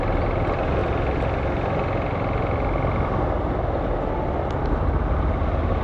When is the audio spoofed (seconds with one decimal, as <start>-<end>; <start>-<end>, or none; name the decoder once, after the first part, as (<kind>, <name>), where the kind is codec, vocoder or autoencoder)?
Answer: none